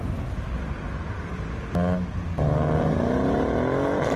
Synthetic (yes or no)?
no